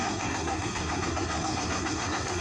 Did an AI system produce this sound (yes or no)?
yes